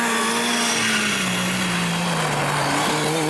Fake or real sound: real